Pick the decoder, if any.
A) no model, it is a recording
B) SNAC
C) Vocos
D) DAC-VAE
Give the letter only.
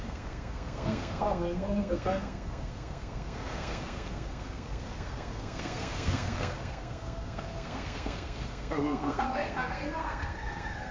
B